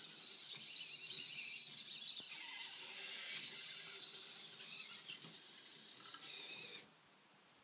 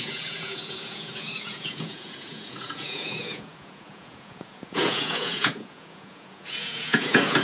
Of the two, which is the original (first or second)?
first